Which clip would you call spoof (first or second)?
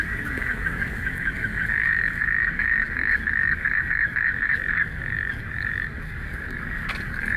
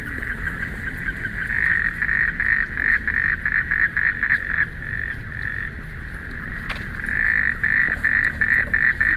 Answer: first